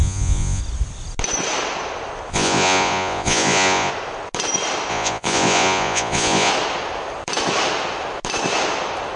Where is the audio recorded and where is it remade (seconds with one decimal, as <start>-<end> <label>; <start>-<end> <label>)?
0.0-0.6 remade; 0.6-2.3 recorded; 2.3-3.9 remade; 3.9-4.9 recorded; 4.9-6.5 remade; 6.5-9.2 recorded